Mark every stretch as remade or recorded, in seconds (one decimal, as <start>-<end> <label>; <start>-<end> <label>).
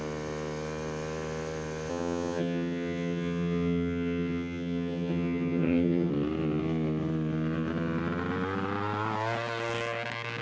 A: 0.0-1.9 recorded; 1.9-6.1 remade; 6.1-10.4 recorded